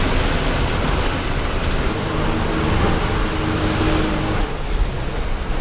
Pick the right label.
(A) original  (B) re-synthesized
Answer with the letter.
A